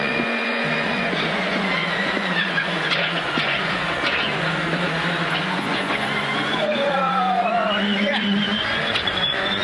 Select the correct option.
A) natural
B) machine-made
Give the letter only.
B